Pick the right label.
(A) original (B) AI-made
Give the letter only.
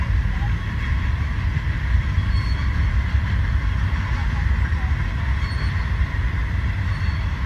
A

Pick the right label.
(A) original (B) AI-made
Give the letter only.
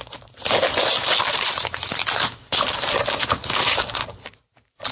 A